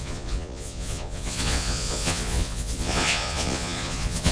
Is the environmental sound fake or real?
fake